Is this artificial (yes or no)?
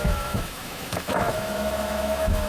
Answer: yes